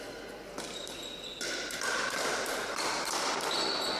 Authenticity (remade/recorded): recorded